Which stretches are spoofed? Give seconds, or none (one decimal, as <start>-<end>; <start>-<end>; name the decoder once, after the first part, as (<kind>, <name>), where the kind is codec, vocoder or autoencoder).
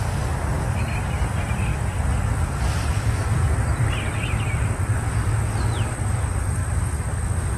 0.0-1.7 (vocoder, BigVGAN v2); 2.6-5.3; 5.9-6.6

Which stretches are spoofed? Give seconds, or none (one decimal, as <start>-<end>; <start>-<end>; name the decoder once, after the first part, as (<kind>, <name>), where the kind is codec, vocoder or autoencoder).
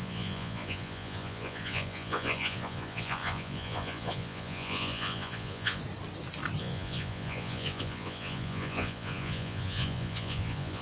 0.0-5.8 (vocoder, Vocos); 6.6-10.8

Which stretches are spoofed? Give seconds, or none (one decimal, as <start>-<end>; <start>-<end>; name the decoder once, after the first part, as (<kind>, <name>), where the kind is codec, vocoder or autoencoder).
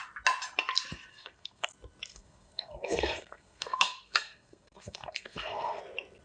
1.1-1.7 (codec, SNAC); 2.1-5.8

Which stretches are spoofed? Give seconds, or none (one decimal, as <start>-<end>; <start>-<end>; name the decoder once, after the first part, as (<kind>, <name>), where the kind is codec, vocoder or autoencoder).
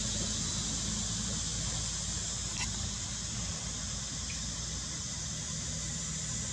none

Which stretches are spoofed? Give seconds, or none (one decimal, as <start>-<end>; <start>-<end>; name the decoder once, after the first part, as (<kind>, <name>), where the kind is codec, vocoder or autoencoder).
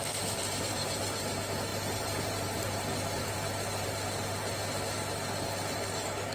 none